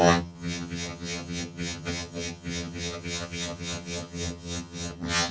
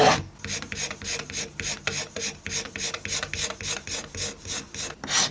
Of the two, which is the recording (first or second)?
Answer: second